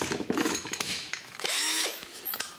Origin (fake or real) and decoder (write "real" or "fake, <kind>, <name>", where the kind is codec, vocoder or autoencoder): fake, autoencoder, DAC-VAE